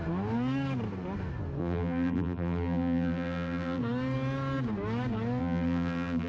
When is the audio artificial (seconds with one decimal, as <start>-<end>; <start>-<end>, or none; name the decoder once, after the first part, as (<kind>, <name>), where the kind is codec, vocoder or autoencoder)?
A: 1.6-3.8 (vocoder, BigVGAN v2); 5.4-6.3